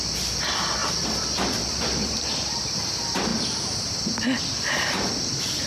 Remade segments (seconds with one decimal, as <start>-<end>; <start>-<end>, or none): 0.8-2.8